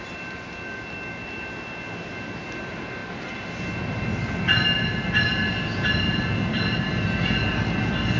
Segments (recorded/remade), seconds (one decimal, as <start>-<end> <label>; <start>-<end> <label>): 0.0-8.2 recorded